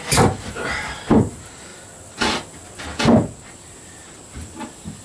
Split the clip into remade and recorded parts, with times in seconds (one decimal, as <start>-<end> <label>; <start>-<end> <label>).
0.0-5.0 recorded